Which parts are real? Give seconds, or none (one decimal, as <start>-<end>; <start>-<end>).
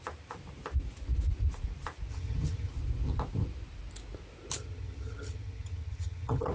0.0-2.1; 2.7-4.6